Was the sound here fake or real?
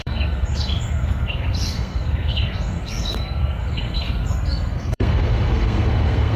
fake